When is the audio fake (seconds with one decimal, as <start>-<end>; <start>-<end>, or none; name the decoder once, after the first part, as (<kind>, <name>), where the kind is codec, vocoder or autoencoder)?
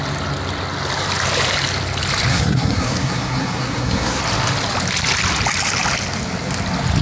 2.3-4.2 (codec, SNAC)